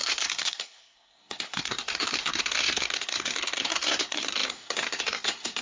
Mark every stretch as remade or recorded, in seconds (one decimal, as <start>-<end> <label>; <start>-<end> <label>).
0.0-5.6 remade